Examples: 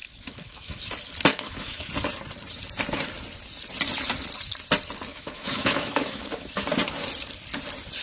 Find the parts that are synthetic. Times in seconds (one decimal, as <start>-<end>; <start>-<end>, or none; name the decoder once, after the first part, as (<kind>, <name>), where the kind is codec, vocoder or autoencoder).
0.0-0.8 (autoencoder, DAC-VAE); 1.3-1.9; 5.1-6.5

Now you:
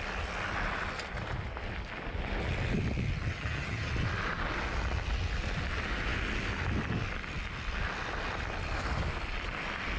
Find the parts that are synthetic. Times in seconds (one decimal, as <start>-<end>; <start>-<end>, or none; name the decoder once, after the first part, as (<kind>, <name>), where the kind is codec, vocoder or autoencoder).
3.3-3.9 (vocoder, HiFi-GAN)

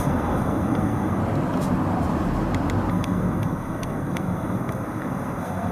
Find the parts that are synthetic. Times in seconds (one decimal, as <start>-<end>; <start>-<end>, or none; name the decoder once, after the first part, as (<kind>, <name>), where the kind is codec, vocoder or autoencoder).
0.0-1.2 (codec, SNAC); 2.9-5.7

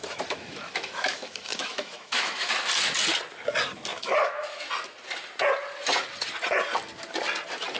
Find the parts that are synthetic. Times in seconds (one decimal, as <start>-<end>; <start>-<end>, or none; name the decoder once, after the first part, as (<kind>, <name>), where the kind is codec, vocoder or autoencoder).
0.0-2.5 (autoencoder, DAC-VAE); 3.9-4.7

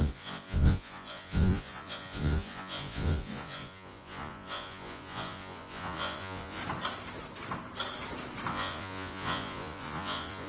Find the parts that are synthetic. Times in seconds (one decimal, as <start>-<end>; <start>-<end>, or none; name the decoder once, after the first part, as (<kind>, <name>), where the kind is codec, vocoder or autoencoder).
0.0-6.6 (vocoder, Vocos); 8.5-10.5